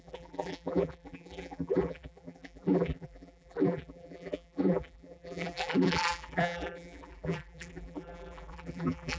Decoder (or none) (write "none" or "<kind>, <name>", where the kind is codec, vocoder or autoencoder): vocoder, BigVGAN v2